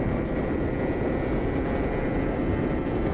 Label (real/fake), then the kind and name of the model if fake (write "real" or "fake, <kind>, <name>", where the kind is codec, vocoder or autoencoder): real